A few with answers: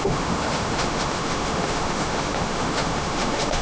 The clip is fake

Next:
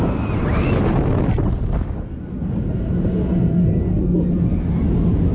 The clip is real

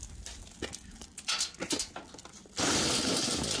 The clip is real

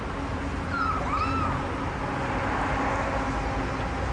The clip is real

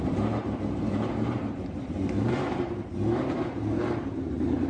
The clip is fake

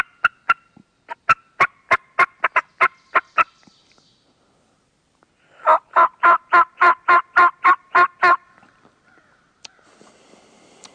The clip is real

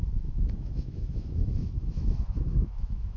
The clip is fake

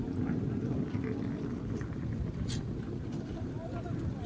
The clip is real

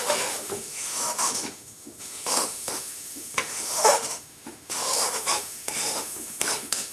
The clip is fake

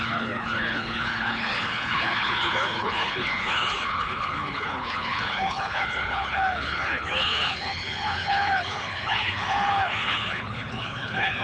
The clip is fake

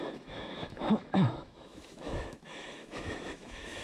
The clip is fake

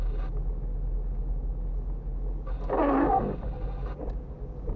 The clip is real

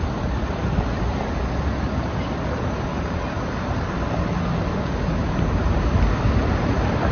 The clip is real